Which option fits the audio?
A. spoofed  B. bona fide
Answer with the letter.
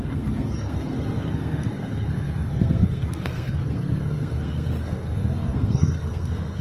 A